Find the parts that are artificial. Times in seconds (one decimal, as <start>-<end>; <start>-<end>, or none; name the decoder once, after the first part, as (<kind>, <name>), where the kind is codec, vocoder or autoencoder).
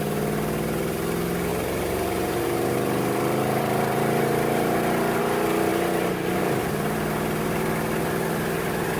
1.5-5.2 (vocoder, BigVGAN v2); 5.7-6.4